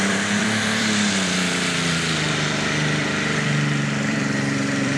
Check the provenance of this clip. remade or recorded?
remade